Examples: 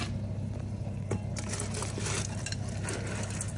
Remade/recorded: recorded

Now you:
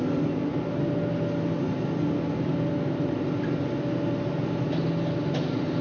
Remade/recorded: recorded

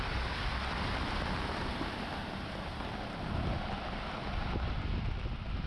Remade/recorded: recorded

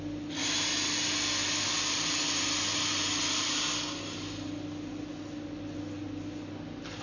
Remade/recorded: recorded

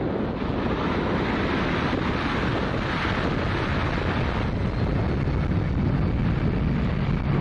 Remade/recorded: recorded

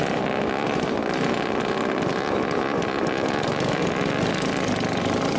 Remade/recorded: recorded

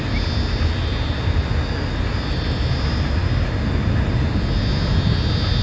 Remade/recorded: recorded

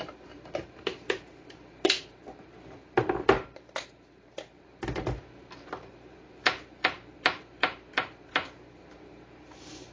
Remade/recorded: remade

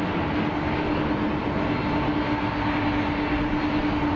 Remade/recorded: recorded